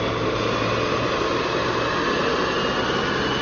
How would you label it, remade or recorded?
recorded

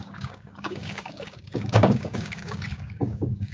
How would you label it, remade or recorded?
remade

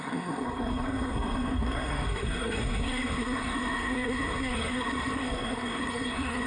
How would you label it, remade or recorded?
remade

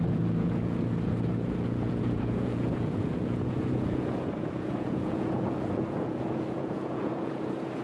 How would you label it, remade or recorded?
remade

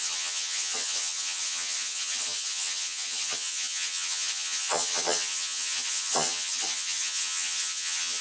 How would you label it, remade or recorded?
remade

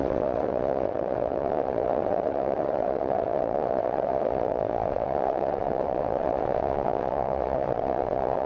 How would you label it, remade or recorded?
remade